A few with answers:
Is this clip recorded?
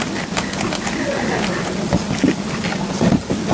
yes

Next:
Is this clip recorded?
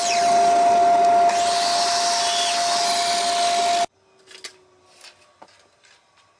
yes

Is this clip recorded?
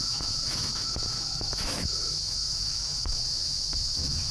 no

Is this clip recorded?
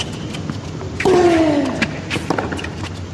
yes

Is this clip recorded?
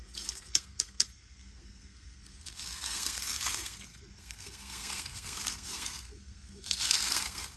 no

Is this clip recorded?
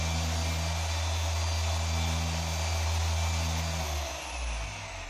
yes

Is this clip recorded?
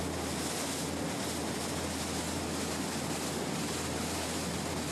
yes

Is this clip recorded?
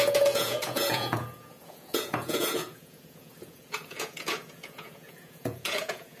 no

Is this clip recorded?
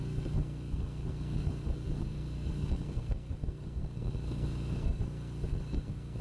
no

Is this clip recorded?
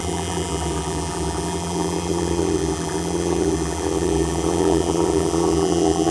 no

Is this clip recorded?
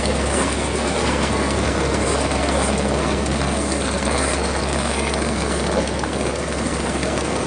no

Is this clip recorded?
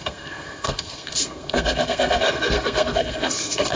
no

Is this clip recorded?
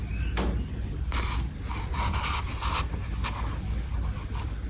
yes